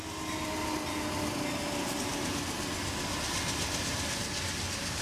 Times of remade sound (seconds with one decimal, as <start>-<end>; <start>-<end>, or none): none